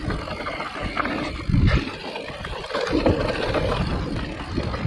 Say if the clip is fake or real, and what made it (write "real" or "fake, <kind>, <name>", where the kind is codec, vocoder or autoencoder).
real